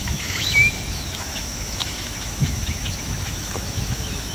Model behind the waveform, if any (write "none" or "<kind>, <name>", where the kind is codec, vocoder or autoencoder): autoencoder, DAC-VAE